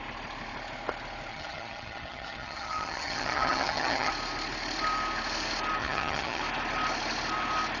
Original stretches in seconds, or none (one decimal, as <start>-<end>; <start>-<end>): 0.0-1.3; 4.1-5.8; 6.4-7.8